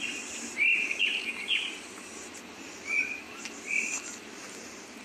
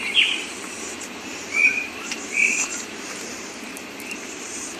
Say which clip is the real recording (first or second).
first